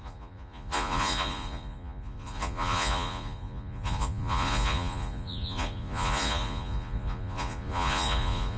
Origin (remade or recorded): remade